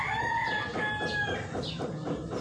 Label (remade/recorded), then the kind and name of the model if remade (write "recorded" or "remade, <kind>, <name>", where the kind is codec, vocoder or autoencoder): recorded